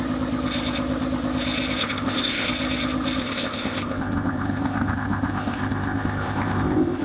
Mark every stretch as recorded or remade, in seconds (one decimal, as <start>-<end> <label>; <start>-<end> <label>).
0.0-1.8 recorded; 1.8-2.5 remade; 2.5-3.2 recorded; 3.2-7.0 remade